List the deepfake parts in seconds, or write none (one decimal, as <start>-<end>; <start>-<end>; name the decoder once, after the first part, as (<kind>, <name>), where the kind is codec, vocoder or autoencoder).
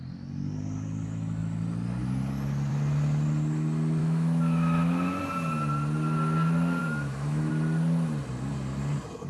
4.0-5.2 (autoencoder, DAC-VAE); 6.8-7.5